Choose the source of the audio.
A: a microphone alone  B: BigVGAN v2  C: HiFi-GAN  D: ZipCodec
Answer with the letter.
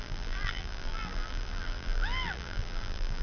B